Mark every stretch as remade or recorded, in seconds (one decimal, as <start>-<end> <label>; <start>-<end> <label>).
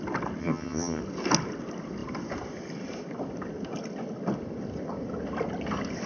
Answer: 0.0-0.4 recorded; 0.4-1.0 remade; 1.0-6.1 recorded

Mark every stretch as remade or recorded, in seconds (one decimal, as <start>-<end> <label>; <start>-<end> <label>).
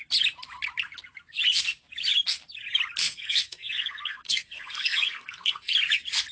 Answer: 0.0-3.0 recorded; 3.0-5.7 remade; 5.7-6.3 recorded